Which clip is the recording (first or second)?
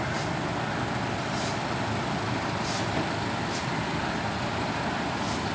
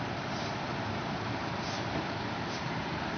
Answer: first